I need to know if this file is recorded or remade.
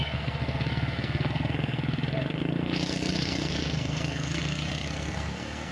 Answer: remade